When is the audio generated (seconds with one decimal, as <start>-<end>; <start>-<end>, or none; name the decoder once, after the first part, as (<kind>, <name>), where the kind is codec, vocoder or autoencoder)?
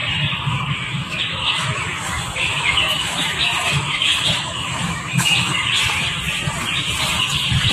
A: 0.7-5.8 (autoencoder, DAC-VAE)